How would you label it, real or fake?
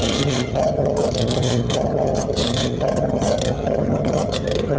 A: fake